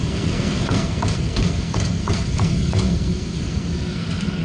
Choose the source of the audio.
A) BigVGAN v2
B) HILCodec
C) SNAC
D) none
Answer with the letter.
C